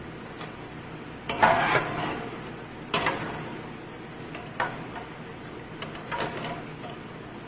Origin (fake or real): real